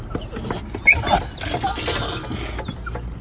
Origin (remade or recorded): recorded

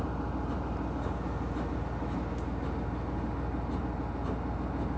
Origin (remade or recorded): recorded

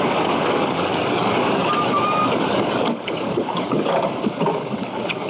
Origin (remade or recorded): remade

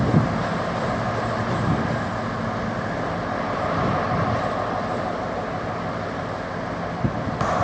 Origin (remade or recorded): recorded